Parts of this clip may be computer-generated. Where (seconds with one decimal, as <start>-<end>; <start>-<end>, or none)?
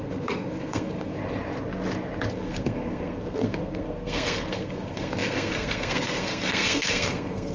0.0-1.2; 2.3-7.5